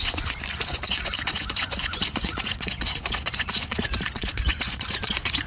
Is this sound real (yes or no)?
no